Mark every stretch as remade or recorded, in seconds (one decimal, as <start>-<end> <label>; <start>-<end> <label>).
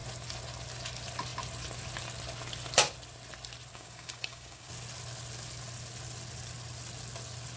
0.0-3.7 recorded; 3.7-4.7 remade; 4.7-7.6 recorded